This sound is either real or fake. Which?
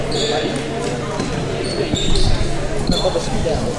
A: real